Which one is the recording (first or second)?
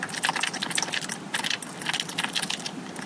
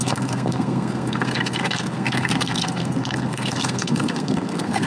first